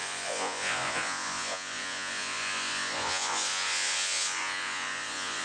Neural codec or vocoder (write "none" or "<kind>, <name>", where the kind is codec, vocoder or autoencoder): vocoder, Vocos